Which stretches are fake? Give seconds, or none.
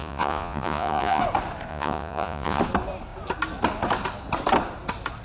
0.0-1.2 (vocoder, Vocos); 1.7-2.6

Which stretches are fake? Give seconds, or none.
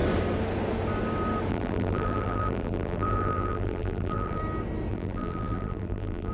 1.5-4.4 (vocoder, BigVGAN v2); 4.9-6.3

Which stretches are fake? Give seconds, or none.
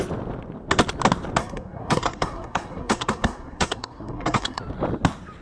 1.4-4.6 (codec, SNAC)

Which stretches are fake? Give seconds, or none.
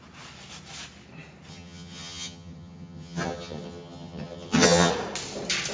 1.5-4.9 (vocoder, HiFi-GAN)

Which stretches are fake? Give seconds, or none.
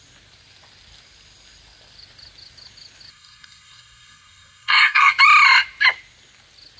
3.1-5.1 (codec, SNAC)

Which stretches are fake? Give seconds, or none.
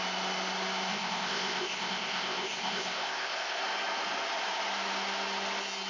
0.9-3.6 (codec, ZipCodec)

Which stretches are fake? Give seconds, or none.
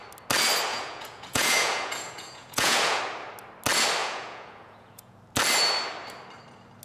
0.7-3.0 (vocoder, Vocos); 4.0-5.2